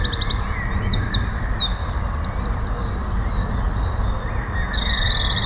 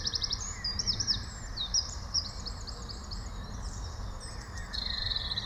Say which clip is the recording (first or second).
first